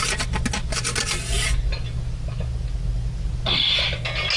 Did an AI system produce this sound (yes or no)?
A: no